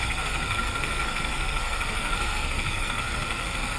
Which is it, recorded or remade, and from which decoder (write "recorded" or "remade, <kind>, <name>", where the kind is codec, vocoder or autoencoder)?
remade, codec, SNAC